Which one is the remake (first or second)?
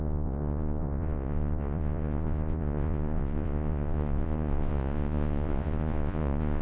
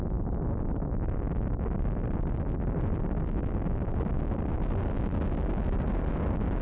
first